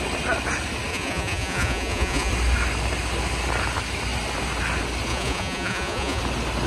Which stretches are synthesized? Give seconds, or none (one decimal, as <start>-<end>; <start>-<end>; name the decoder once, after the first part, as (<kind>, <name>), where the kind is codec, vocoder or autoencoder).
0.9-2.3 (vocoder, Vocos); 5.1-6.2